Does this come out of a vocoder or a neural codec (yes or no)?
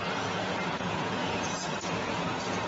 yes